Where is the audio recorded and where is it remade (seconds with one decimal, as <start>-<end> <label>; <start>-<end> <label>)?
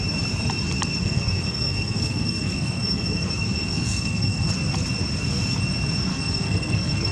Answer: 0.0-1.0 recorded; 1.0-4.5 remade; 4.5-6.1 recorded; 6.1-7.1 remade